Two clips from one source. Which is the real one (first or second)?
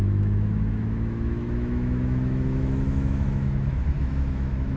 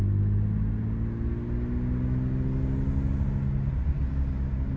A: second